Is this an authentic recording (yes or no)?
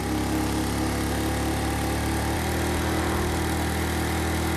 yes